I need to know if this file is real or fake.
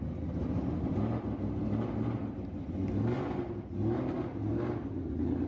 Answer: real